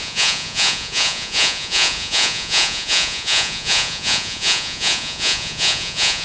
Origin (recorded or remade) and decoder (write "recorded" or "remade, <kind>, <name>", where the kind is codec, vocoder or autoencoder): remade, vocoder, Vocos